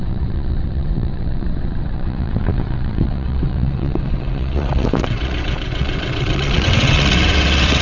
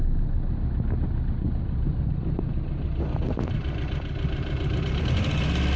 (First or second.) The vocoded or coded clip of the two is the first